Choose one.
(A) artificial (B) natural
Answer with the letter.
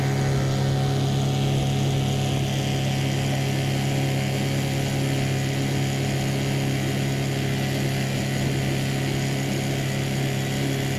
B